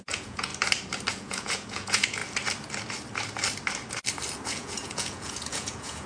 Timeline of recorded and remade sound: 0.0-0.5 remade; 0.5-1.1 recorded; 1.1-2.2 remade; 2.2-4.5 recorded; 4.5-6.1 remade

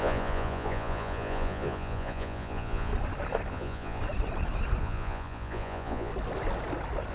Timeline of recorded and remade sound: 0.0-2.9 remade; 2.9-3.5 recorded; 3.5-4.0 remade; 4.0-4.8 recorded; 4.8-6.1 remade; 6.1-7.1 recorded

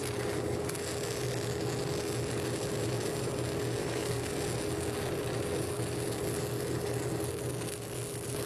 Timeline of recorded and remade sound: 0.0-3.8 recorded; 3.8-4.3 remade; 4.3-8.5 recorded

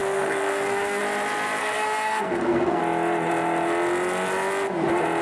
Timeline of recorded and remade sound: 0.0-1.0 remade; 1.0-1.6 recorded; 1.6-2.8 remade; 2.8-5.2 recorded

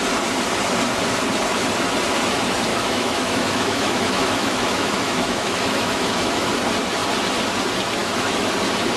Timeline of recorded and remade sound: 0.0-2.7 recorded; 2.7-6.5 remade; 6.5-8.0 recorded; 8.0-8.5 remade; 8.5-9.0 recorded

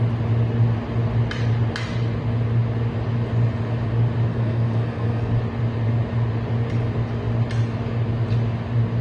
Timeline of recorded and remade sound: 0.0-4.3 recorded; 4.3-5.3 remade; 5.3-9.0 recorded

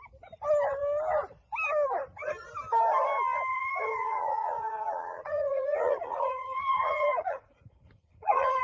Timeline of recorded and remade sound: 0.0-3.5 recorded; 3.5-8.6 remade

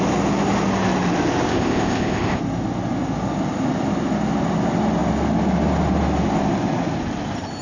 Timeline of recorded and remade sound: 0.0-1.5 recorded; 1.5-2.4 remade; 2.4-7.6 recorded